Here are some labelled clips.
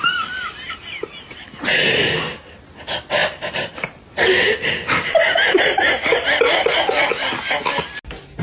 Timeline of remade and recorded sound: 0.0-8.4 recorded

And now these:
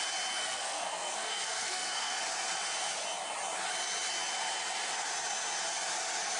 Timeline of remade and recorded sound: 0.0-0.4 recorded; 0.4-2.2 remade; 2.2-6.4 recorded